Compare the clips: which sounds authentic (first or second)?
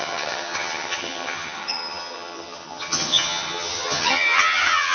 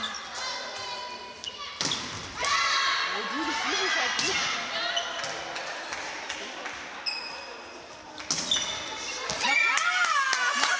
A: second